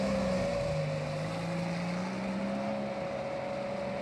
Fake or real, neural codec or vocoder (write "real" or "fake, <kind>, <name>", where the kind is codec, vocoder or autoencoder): real